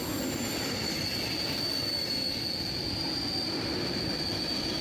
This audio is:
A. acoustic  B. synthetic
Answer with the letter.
A